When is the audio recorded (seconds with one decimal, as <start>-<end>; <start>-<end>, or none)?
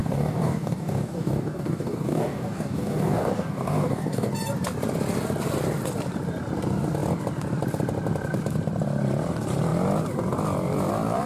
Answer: 4.3-11.3